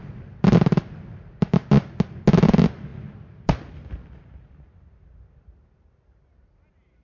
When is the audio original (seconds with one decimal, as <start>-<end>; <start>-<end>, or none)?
0.0-7.0

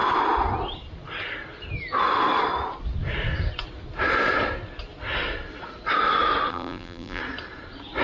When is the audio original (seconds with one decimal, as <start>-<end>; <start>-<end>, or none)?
0.0-6.5; 7.2-8.0

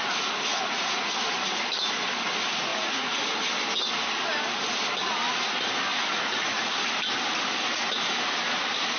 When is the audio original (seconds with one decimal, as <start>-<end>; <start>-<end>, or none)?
0.0-0.5; 1.1-2.7; 3.4-5.9; 6.9-9.0

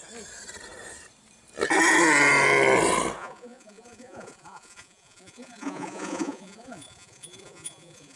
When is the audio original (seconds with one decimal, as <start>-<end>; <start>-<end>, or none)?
0.0-3.2

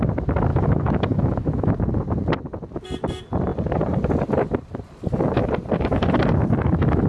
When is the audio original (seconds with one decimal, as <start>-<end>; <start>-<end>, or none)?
0.0-0.5; 1.7-7.1

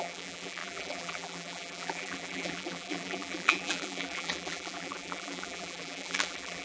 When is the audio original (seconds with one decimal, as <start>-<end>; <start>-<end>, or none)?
none

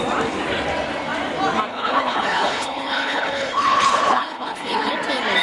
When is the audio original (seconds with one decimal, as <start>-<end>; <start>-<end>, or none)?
0.0-1.7; 4.9-5.4

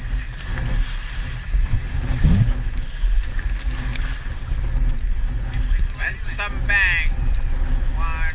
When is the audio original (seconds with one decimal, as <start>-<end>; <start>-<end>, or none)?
0.0-0.5; 2.9-3.9; 6.1-8.3